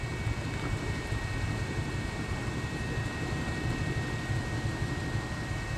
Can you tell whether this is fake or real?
fake